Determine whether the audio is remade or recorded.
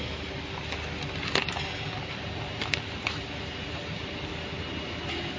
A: recorded